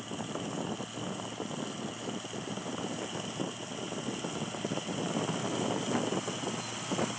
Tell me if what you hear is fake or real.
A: real